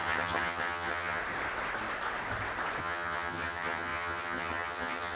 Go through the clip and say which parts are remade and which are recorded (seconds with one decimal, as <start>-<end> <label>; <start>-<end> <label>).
0.0-1.2 remade; 1.2-2.8 recorded; 2.8-5.2 remade